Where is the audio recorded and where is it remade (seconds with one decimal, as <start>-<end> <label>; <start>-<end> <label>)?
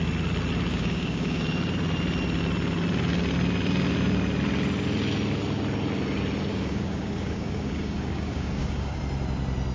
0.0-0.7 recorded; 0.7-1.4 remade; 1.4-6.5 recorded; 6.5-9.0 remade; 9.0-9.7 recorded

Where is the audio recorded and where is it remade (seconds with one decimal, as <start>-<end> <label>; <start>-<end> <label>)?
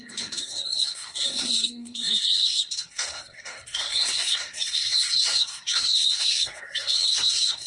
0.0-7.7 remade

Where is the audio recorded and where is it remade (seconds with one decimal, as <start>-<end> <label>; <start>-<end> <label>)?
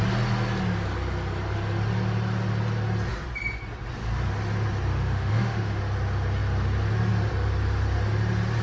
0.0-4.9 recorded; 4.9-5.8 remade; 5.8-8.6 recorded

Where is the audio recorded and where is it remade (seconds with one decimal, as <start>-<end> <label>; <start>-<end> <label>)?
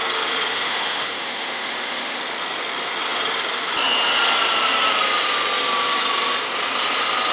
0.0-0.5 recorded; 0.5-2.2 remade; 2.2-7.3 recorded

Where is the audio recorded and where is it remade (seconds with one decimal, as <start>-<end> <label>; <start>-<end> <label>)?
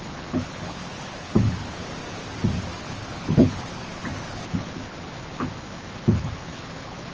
0.0-1.8 remade; 1.8-2.8 recorded; 2.8-7.1 remade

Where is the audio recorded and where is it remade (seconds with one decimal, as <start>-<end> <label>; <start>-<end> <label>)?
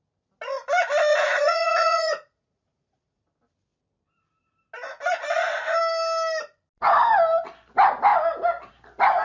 0.0-1.1 recorded; 1.1-3.2 remade; 3.2-9.2 recorded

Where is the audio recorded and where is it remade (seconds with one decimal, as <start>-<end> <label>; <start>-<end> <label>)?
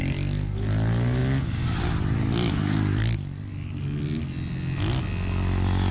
0.0-5.9 recorded